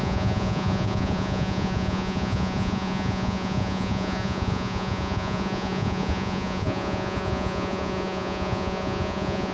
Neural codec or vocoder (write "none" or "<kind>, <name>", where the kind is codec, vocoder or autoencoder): vocoder, Vocos